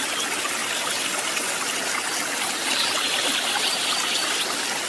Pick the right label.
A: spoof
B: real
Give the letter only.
B